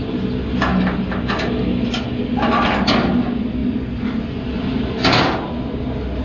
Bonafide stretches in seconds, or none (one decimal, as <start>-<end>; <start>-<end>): 0.0-6.2